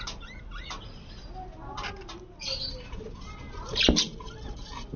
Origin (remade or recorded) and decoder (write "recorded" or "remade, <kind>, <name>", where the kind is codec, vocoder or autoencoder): recorded